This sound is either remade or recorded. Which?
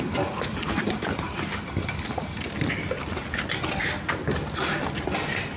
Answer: recorded